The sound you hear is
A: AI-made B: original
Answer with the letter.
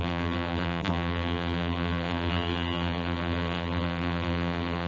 A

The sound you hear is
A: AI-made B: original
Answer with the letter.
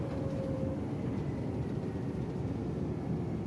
A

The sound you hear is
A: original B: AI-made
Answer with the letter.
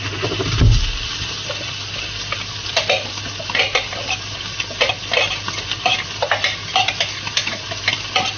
A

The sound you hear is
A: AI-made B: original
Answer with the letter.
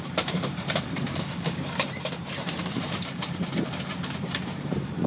A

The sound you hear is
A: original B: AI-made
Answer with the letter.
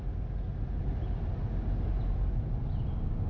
A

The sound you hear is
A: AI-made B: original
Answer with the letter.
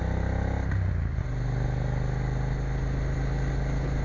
B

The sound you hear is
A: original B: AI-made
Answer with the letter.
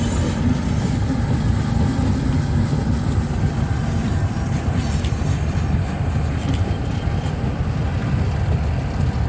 A